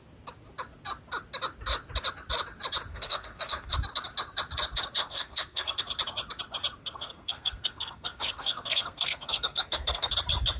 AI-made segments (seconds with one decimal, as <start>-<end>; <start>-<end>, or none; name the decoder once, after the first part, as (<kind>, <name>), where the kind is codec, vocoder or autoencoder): 2.9-3.7 (codec, SNAC); 5.0-5.8; 6.8-10.1